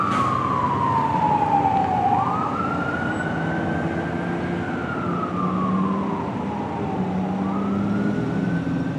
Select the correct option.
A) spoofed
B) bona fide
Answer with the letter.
B